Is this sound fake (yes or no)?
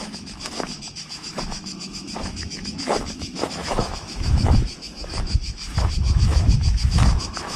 yes